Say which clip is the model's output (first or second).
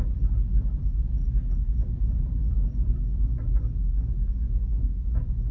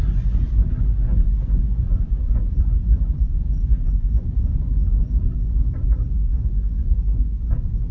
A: second